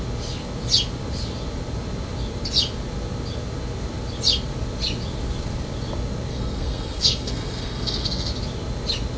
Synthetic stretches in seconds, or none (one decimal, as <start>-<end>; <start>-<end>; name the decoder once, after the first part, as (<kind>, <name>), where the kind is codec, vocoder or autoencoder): 6.3-8.3 (codec, SNAC)